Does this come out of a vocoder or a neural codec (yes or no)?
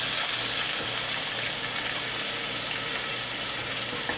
no